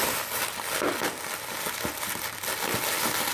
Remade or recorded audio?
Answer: recorded